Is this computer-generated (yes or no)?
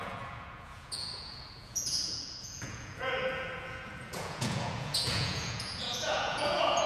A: yes